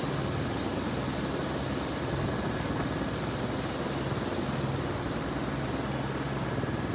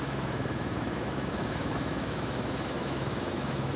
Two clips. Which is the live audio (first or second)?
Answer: first